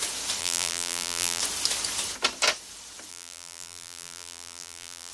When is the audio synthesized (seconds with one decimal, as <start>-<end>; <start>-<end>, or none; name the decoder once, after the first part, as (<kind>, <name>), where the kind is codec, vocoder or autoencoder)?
0.4-1.4 (vocoder, BigVGAN v2); 3.1-5.1